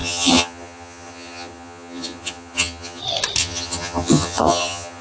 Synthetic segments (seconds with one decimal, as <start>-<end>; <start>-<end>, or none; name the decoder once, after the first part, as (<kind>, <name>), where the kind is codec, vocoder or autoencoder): 0.0-3.0 (vocoder, HiFi-GAN); 3.4-5.0